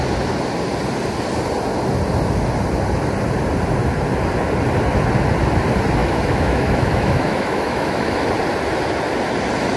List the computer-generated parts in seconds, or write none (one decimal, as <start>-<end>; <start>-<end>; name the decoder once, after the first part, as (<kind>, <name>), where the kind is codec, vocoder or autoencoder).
6.0-8.3 (autoencoder, DAC-VAE)